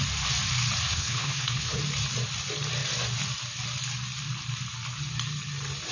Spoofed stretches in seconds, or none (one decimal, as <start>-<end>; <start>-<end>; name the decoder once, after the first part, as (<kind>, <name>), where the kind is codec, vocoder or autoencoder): 0.9-1.8 (codec, HILCodec)